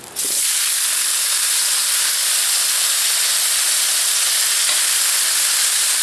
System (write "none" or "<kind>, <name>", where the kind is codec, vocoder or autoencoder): none